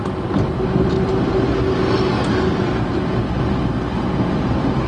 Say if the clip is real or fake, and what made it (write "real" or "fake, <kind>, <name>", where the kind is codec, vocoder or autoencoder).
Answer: real